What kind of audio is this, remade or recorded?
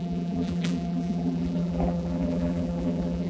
remade